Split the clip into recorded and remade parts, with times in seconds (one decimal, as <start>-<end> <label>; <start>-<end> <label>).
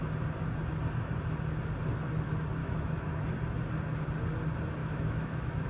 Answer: 0.0-2.6 recorded; 2.6-3.2 remade; 3.2-4.8 recorded; 4.8-5.7 remade